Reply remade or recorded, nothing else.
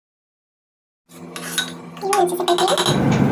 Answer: recorded